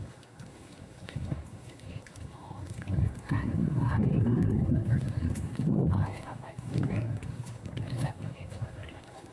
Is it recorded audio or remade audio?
remade